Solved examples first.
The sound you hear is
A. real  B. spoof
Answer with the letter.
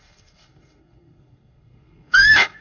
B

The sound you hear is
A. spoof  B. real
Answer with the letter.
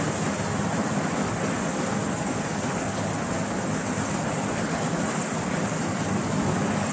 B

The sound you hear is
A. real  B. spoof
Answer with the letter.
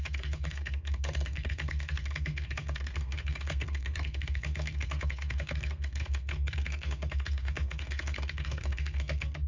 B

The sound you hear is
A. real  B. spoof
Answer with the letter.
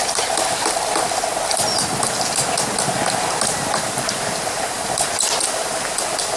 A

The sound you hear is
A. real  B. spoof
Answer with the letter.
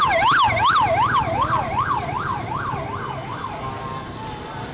A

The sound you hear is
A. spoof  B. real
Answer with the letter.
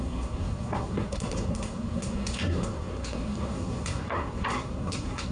A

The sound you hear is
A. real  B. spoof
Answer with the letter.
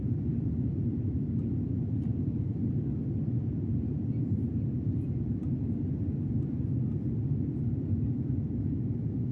A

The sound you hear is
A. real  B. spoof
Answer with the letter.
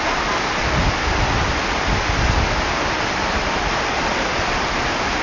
A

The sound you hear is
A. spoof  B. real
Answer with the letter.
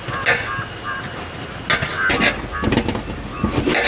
B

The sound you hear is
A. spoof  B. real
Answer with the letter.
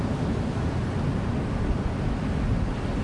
B